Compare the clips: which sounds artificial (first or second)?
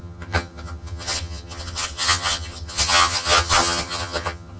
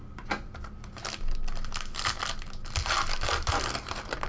first